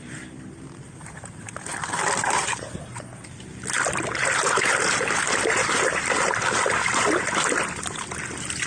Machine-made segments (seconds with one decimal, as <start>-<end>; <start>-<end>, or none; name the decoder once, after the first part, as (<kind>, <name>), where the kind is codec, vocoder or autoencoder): none